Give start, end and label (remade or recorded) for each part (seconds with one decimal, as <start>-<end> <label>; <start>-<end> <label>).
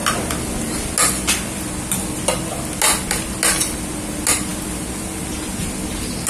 0.0-6.3 recorded